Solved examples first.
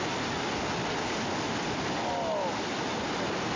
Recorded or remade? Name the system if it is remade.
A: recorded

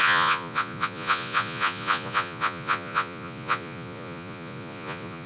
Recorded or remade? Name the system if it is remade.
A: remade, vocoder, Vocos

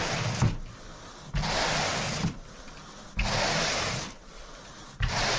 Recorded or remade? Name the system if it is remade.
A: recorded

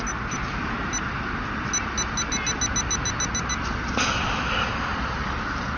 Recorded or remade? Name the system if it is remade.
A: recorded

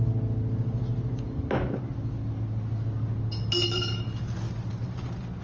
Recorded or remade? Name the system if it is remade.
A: recorded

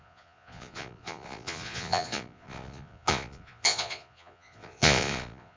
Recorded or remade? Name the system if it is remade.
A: remade, vocoder, Vocos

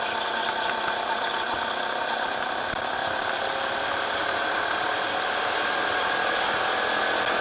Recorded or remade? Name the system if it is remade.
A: recorded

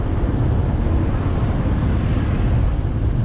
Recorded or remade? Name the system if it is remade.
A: recorded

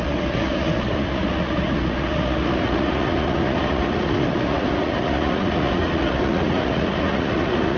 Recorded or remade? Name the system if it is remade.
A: remade, vocoder, Vocos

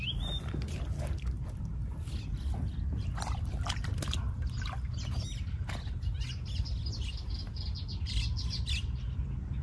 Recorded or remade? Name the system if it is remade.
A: recorded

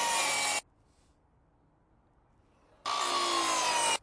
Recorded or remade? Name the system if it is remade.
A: recorded